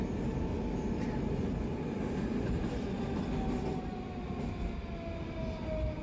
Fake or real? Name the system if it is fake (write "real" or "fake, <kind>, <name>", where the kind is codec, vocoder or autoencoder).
real